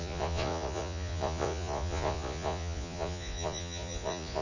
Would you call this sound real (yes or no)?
no